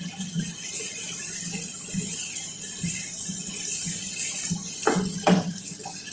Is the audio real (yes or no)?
yes